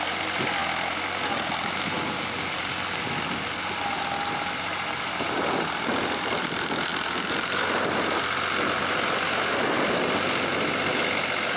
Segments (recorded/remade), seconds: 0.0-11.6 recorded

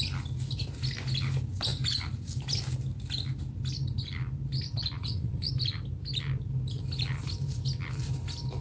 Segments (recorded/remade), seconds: 0.0-5.0 recorded; 5.0-5.5 remade; 5.5-8.6 recorded

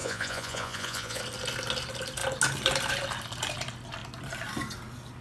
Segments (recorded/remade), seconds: 0.0-1.2 remade; 1.2-5.2 recorded

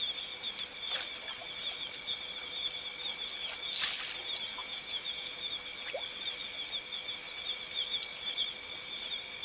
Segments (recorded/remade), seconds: 0.0-4.6 recorded; 4.6-5.4 remade; 5.4-9.4 recorded

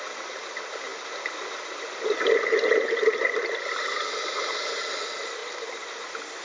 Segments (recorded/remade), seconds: 0.0-6.4 recorded

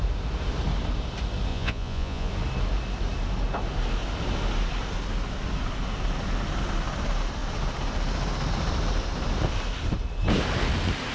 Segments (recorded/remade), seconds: 0.0-1.5 recorded; 1.5-2.3 remade; 2.3-11.1 recorded

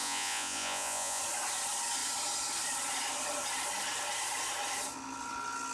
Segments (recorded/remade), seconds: 0.0-1.2 remade; 1.2-5.7 recorded

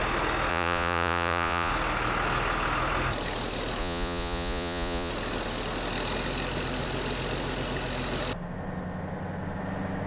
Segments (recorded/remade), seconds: 0.0-0.5 recorded; 0.5-1.7 remade; 1.7-3.8 recorded; 3.8-5.1 remade; 5.1-10.1 recorded